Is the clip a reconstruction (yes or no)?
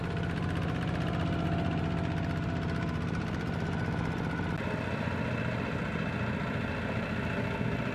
no